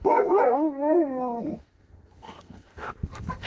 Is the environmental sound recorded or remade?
remade